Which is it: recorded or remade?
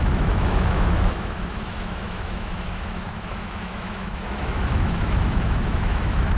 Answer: remade